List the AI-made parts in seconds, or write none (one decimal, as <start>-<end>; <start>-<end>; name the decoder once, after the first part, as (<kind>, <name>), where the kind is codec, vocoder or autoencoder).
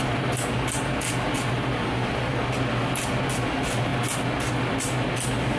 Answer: none